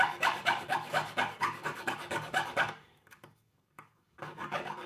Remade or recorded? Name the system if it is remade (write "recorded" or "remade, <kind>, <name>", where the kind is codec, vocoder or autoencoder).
remade, codec, DAC